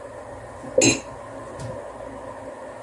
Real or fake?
real